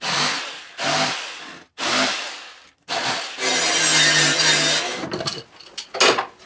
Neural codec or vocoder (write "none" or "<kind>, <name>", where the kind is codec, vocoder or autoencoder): none